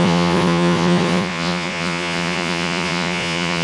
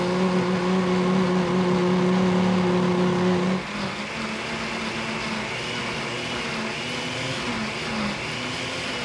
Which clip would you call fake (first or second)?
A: first